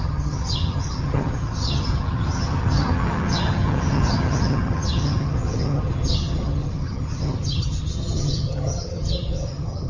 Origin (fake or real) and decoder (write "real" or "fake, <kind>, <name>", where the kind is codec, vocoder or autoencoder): fake, vocoder, HiFi-GAN